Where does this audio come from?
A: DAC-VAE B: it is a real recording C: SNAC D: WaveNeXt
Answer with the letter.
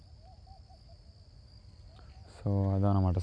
B